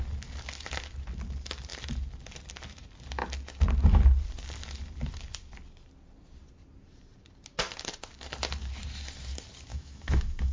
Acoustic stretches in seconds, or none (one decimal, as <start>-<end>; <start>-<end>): 0.0-9.7